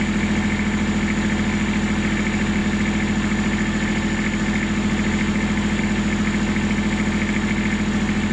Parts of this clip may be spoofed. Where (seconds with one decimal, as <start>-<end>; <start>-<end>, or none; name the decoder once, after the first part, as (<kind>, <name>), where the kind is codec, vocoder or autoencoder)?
none